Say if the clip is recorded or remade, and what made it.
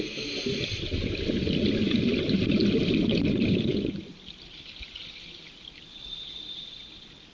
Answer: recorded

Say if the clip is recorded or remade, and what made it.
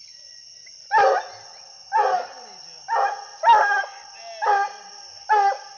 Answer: recorded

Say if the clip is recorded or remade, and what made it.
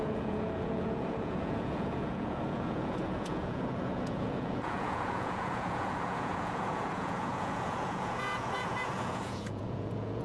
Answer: remade, vocoder, Vocos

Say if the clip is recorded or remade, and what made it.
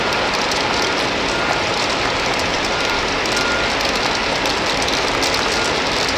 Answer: recorded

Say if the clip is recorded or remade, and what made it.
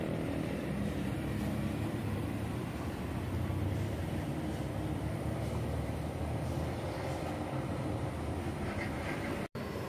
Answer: remade, vocoder, BigVGAN v2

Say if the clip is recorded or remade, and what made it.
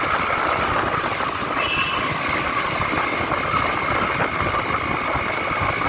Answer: recorded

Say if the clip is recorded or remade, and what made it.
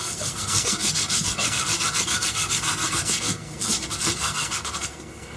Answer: remade, codec, SNAC